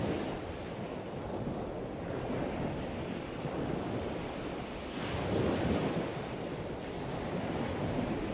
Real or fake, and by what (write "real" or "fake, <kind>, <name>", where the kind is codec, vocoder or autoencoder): real